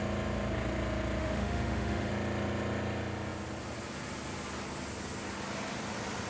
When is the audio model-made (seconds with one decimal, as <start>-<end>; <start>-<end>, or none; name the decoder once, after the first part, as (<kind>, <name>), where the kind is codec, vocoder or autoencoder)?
1.2-2.1 (autoencoder, DAC-VAE)